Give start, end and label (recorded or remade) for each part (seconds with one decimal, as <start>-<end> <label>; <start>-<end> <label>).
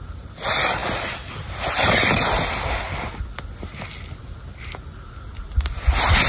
0.0-6.3 recorded